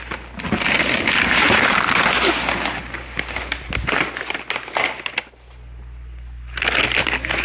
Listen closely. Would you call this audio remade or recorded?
recorded